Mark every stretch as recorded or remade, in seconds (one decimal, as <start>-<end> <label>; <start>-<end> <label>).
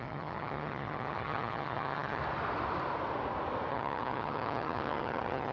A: 0.0-2.2 remade; 2.2-3.7 recorded; 3.7-5.5 remade